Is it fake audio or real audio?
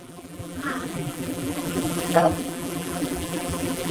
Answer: fake